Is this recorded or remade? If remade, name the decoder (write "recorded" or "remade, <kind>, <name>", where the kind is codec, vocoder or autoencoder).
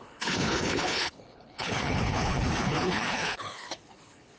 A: remade, codec, HILCodec